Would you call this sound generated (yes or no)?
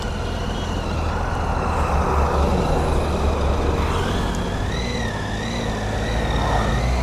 no